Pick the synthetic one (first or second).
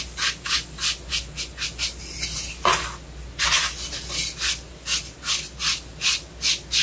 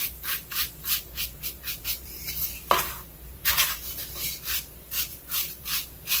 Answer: second